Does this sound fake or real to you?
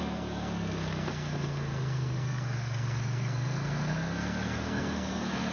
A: fake